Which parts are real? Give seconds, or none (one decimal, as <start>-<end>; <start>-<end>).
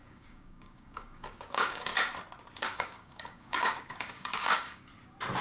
1.9-2.6; 4.9-5.4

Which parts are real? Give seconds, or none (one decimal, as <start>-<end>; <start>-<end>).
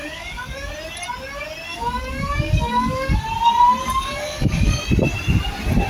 0.7-1.7; 3.2-3.8; 4.8-5.9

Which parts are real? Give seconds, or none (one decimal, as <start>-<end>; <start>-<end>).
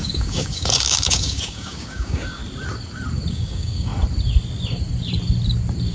2.4-3.3; 3.9-5.9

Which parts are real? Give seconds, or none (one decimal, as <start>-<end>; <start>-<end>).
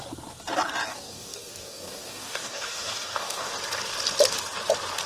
0.0-0.9; 3.5-5.1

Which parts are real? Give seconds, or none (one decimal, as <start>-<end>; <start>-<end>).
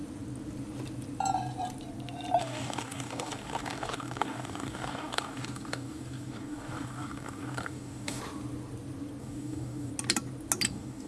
0.0-2.4; 8.2-9.2; 9.9-10.7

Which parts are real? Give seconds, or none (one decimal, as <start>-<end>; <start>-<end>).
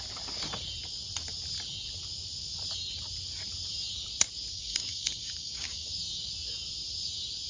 0.0-4.5; 5.9-7.5